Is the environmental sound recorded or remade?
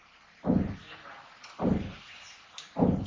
recorded